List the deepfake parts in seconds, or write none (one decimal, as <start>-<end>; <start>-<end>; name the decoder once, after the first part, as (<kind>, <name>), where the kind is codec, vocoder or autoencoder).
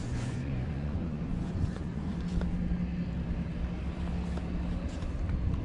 0.0-2.1 (vocoder, Vocos)